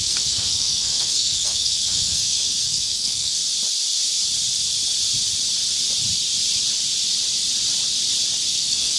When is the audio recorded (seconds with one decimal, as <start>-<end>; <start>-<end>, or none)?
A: 3.4-8.5